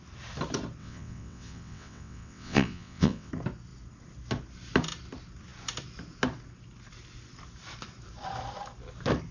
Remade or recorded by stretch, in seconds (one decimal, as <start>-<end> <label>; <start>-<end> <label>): 0.0-0.8 recorded; 0.8-3.3 remade; 3.3-9.3 recorded